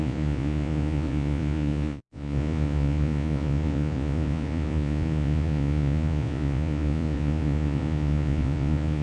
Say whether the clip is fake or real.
fake